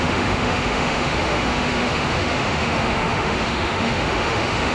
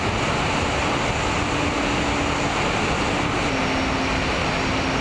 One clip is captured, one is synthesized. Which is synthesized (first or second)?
first